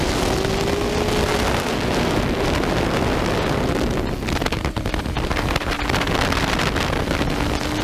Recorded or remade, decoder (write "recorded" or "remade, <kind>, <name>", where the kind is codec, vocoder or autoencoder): recorded